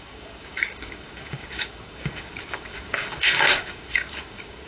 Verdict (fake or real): fake